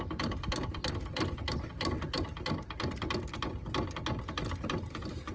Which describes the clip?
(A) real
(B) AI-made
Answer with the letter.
A